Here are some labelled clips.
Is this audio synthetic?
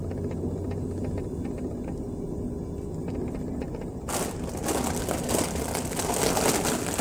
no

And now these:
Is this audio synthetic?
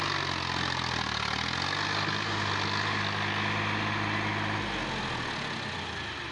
no